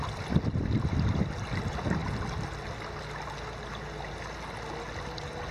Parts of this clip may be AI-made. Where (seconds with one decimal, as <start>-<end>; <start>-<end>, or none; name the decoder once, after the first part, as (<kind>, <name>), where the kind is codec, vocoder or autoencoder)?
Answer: none